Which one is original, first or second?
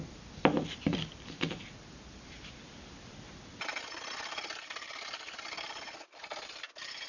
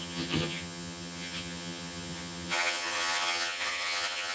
first